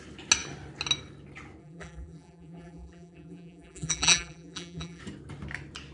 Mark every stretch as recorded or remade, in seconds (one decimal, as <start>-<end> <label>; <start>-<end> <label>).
0.0-1.6 recorded; 1.6-5.0 remade; 5.0-5.9 recorded